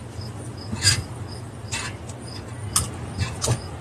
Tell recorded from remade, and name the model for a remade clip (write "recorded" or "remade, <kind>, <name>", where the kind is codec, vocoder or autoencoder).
recorded